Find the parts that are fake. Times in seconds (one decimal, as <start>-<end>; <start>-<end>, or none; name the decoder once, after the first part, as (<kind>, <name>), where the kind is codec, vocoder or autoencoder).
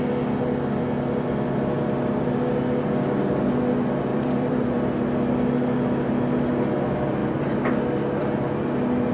4.1-4.9 (vocoder, BigVGAN v2)